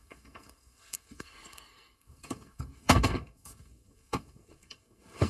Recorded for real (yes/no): no